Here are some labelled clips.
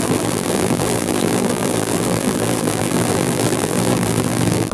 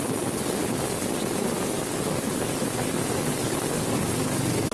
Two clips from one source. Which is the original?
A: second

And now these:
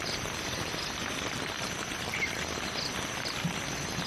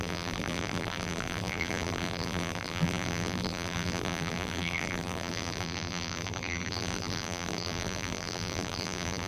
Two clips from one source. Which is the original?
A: first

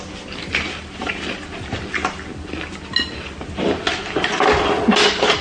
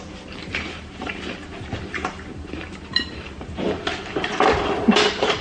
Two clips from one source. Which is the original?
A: first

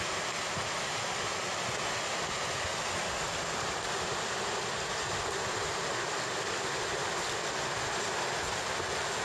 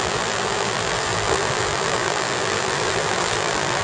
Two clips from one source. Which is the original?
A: first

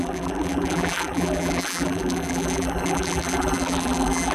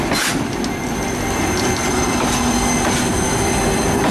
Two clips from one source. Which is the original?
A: second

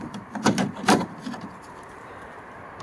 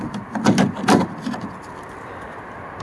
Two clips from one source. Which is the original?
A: second